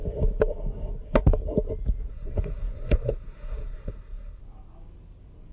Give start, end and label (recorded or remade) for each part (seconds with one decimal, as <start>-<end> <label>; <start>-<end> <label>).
0.0-2.1 recorded; 2.1-4.4 remade; 4.4-5.5 recorded